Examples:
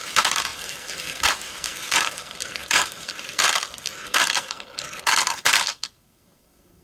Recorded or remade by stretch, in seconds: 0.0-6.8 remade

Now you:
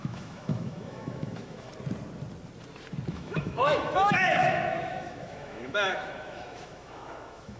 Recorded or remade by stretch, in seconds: 0.0-1.7 remade; 1.7-3.1 recorded; 3.1-7.6 remade

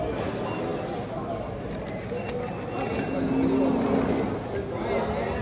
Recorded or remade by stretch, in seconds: 0.0-5.4 recorded

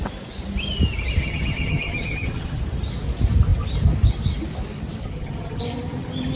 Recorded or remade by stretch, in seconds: 0.0-1.2 recorded; 1.2-2.6 remade; 2.6-5.0 recorded; 5.0-5.6 remade; 5.6-6.4 recorded